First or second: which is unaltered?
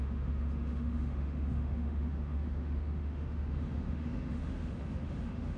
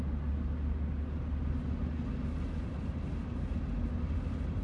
second